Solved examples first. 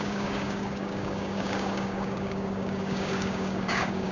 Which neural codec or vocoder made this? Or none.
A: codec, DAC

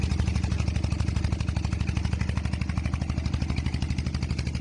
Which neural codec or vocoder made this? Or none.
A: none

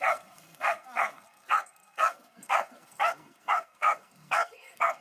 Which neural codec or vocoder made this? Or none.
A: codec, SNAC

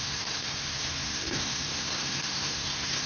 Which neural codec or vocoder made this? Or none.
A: codec, SNAC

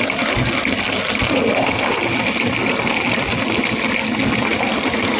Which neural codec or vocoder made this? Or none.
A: none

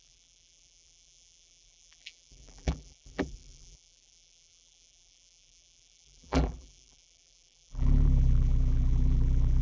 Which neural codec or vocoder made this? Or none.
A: vocoder, BigVGAN v2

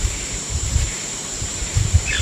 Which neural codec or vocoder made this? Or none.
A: vocoder, BigVGAN v2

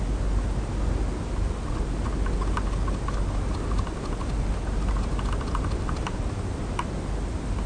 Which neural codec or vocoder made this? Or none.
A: none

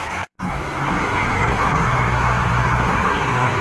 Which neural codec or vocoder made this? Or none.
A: codec, SNAC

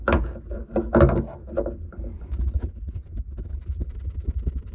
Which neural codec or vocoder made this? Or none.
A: none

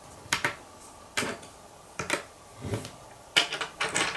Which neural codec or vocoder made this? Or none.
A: vocoder, BigVGAN v2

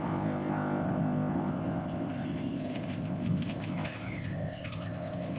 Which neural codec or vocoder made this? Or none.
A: codec, ZipCodec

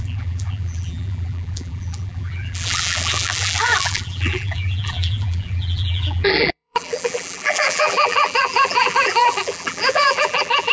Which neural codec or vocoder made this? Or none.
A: vocoder, BigVGAN v2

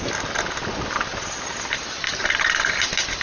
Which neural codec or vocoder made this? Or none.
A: none